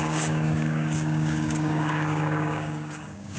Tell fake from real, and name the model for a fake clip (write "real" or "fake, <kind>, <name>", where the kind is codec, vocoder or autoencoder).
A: fake, codec, DAC